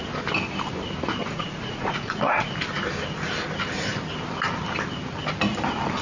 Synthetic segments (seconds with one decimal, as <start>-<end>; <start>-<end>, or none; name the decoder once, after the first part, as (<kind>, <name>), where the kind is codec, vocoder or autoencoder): 1.2-2.5 (vocoder, Vocos)